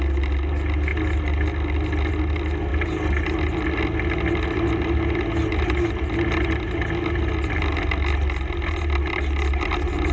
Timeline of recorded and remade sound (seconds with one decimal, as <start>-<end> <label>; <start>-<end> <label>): 0.0-10.1 recorded